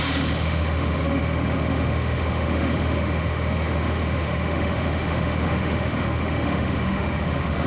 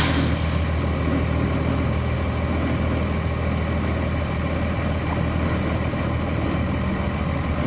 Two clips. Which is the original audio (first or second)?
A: second